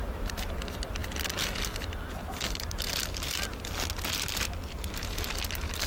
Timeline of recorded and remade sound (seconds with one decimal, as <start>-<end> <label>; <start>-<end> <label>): 0.0-5.9 recorded